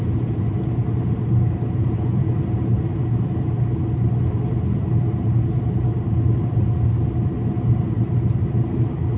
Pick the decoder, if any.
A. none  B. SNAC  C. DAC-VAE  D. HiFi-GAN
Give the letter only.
A